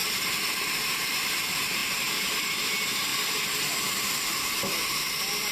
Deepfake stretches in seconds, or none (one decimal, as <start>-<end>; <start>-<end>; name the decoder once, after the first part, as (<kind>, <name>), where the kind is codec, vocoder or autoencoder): 0.7-3.1 (vocoder, BigVGAN v2); 3.9-5.5